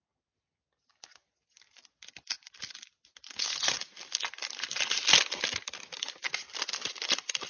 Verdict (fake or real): real